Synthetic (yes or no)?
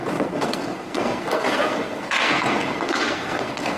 yes